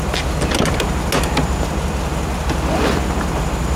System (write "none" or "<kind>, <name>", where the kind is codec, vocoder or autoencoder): none